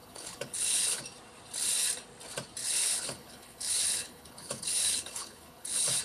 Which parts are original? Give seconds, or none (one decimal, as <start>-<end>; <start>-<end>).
1.0-2.6